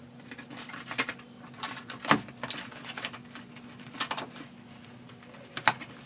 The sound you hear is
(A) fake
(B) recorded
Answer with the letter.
B